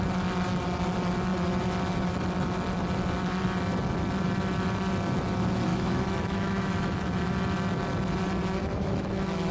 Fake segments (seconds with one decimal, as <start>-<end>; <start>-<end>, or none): 5.7-7.3; 8.6-9.5